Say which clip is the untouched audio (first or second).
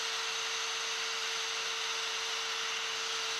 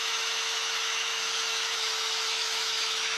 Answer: first